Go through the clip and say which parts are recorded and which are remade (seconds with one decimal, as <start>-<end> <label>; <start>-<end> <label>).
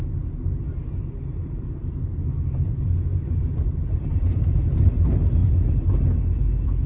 0.0-1.3 recorded; 1.3-2.0 remade; 2.0-3.1 recorded; 3.1-4.9 remade; 4.9-5.4 recorded; 5.4-6.0 remade; 6.0-6.9 recorded